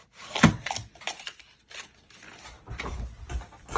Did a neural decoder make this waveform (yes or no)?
no